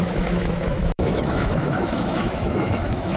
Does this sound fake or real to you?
fake